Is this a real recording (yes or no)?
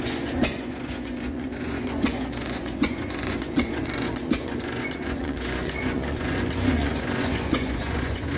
no